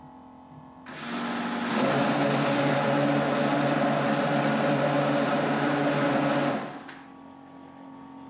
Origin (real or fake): real